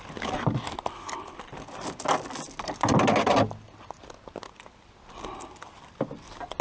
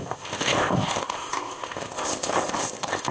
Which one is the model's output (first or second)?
second